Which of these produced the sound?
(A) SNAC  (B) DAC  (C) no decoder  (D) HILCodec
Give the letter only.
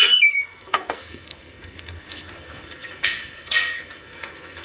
A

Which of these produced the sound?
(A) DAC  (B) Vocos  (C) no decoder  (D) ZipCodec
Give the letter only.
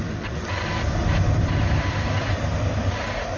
C